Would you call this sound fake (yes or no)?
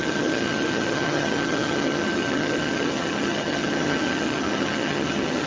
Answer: yes